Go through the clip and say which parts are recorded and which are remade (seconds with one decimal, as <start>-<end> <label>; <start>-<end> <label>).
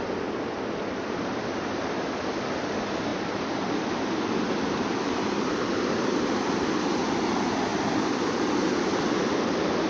0.0-7.7 remade; 7.7-8.9 recorded; 8.9-9.9 remade